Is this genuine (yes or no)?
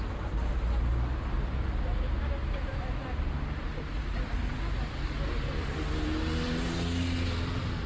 yes